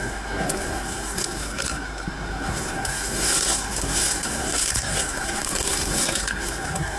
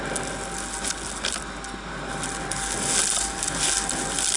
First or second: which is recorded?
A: second